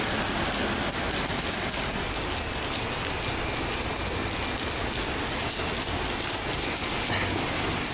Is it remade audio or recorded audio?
recorded